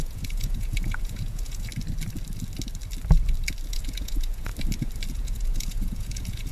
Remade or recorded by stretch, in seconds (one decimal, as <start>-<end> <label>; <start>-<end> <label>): 0.0-1.7 remade; 1.7-3.7 recorded; 3.7-4.5 remade; 4.5-5.1 recorded; 5.1-6.5 remade